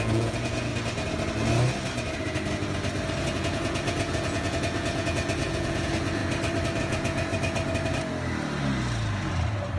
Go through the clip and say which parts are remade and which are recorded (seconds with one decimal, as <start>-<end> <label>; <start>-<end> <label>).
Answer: 0.0-0.7 remade; 0.7-3.3 recorded; 3.3-6.2 remade; 6.2-6.8 recorded; 6.8-7.3 remade; 7.3-9.8 recorded